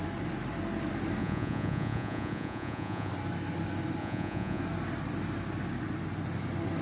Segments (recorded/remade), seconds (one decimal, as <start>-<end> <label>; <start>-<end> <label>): 0.0-1.2 recorded; 1.2-3.1 remade; 3.1-4.0 recorded; 4.0-4.6 remade; 4.6-6.8 recorded